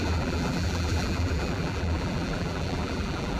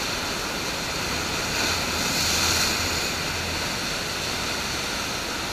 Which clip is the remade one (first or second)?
first